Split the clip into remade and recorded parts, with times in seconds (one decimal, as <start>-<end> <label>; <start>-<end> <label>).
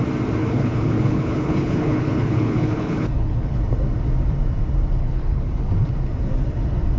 0.0-0.4 recorded; 0.4-3.6 remade; 3.6-5.0 recorded; 5.0-5.7 remade; 5.7-7.0 recorded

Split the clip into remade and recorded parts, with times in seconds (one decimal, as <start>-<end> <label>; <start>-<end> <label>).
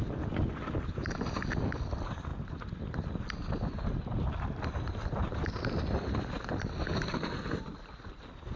0.0-8.6 recorded